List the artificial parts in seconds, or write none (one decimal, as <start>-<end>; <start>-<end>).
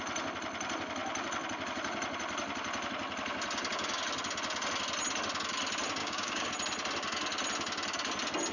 6.0-6.5